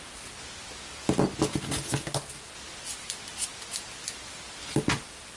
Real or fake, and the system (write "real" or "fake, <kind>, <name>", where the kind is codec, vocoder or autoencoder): real